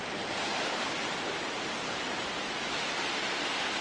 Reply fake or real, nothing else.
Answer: real